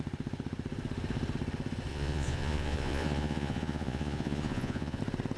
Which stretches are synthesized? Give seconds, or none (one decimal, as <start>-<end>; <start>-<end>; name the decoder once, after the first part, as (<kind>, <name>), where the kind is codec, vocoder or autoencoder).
1.9-5.0 (vocoder, Vocos)